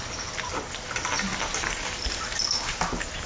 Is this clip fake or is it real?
real